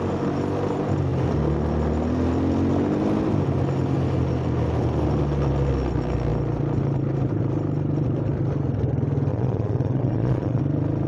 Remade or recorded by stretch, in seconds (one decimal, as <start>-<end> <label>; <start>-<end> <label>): 0.0-9.3 recorded; 9.3-10.6 remade; 10.6-11.1 recorded